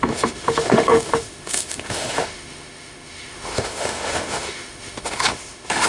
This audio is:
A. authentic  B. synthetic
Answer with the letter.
B